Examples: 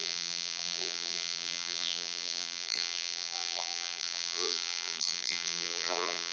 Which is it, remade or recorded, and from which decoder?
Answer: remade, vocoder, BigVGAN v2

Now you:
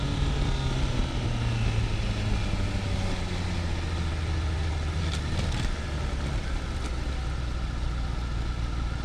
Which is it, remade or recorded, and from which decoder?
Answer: recorded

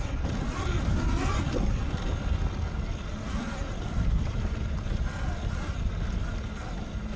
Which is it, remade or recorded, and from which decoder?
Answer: recorded